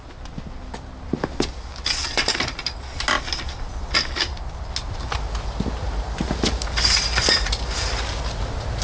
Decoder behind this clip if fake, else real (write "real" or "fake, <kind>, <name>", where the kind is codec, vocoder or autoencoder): real